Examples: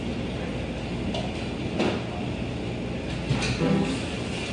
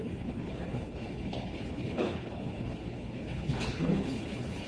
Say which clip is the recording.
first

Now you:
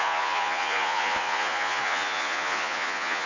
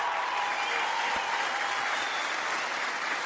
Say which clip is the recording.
second